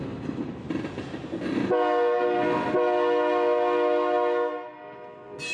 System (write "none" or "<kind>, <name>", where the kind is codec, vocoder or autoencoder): none